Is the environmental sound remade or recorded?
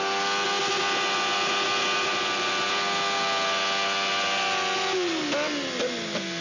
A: recorded